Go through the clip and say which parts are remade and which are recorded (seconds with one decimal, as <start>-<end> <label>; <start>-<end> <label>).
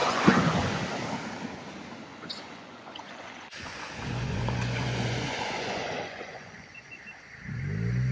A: 0.0-0.8 remade; 0.8-2.1 recorded; 2.1-7.0 remade; 7.0-8.1 recorded